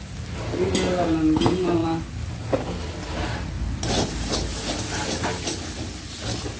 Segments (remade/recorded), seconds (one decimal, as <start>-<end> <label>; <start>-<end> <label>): 0.0-6.6 recorded